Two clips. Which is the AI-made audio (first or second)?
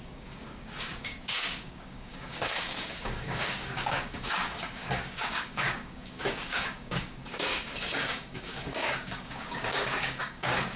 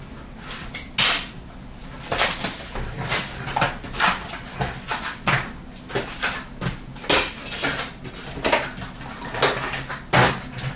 first